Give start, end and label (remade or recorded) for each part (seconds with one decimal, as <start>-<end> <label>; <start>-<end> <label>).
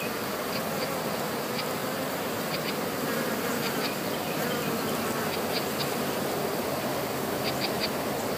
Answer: 0.0-6.9 recorded; 6.9-7.4 remade; 7.4-8.4 recorded